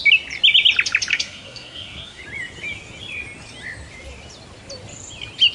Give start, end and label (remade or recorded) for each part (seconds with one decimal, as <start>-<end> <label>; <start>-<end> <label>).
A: 0.0-1.1 recorded; 1.1-2.2 remade; 2.2-5.5 recorded